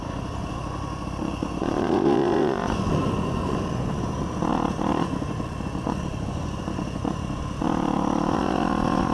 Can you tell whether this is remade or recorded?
remade